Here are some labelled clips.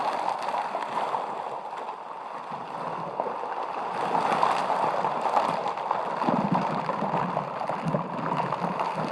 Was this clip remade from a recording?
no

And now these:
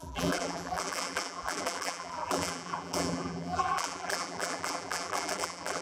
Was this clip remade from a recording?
yes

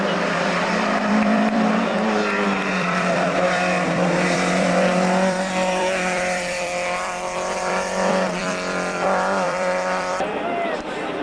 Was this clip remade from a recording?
yes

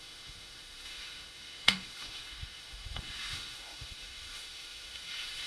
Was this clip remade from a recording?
yes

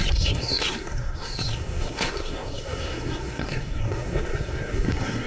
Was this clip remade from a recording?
yes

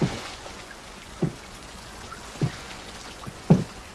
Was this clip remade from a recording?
yes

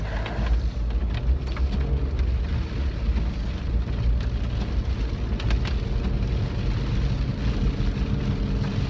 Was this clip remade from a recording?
no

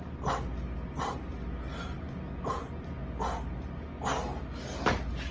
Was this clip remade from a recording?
no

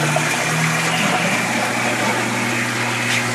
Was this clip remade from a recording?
no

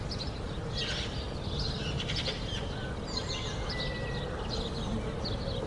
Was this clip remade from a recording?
no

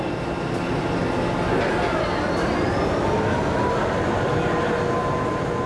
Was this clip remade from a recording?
no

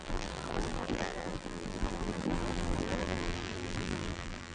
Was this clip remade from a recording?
yes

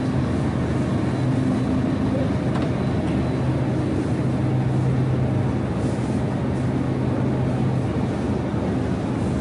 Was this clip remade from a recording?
no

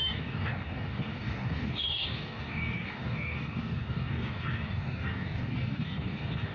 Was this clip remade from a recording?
yes